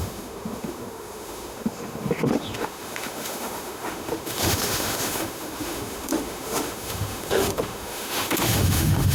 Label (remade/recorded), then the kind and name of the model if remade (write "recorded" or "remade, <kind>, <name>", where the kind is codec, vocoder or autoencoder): remade, autoencoder, DAC-VAE